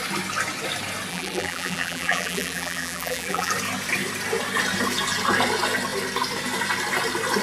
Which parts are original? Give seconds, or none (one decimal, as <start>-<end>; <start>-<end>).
0.0-1.1; 3.5-7.4